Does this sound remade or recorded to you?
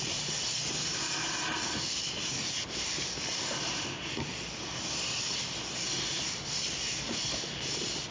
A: recorded